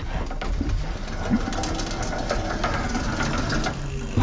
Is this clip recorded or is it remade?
recorded